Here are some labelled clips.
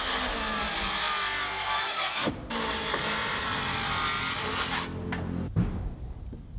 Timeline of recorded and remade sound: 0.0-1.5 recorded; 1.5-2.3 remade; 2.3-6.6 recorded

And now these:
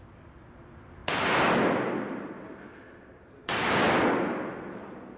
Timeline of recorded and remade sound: 0.0-5.2 recorded

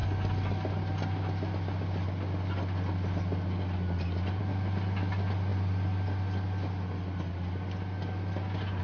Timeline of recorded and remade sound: 0.0-8.8 recorded

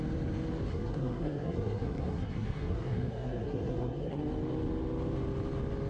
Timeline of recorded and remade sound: 0.0-0.7 recorded; 0.7-4.2 remade; 4.2-5.9 recorded

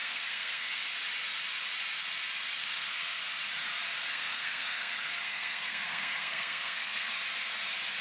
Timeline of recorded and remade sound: 0.0-0.8 remade; 0.8-2.6 recorded; 2.6-3.2 remade; 3.2-4.1 recorded; 4.1-7.2 remade; 7.2-8.0 recorded

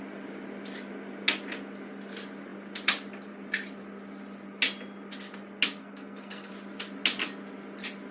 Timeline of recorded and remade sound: 0.0-5.8 recorded; 5.8-6.5 remade; 6.5-8.1 recorded